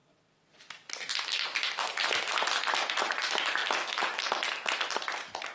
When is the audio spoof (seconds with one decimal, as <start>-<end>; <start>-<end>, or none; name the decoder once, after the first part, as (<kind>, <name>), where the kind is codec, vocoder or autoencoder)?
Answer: none